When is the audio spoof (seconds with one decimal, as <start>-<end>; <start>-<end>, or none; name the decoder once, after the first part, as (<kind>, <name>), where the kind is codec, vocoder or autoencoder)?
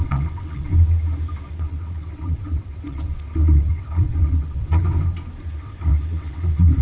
0.0-0.7 (vocoder, WaveNeXt); 1.5-4.8; 5.5-6.8